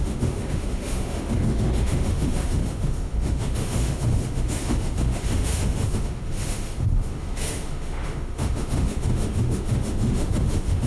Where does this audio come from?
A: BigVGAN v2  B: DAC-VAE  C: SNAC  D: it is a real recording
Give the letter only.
B